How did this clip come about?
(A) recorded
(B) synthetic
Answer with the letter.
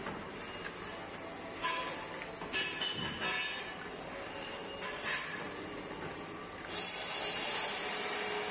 A